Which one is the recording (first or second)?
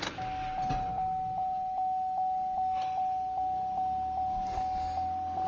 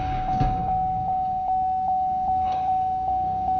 first